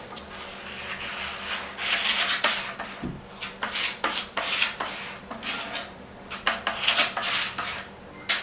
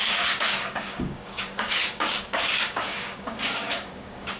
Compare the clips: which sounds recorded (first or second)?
first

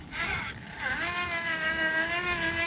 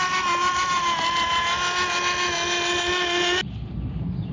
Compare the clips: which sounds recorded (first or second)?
second